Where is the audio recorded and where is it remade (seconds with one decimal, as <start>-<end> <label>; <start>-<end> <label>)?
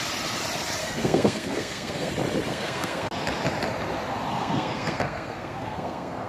0.0-0.8 recorded; 0.8-2.1 remade; 2.1-2.5 recorded; 2.5-3.1 remade; 3.1-4.3 recorded; 4.3-6.3 remade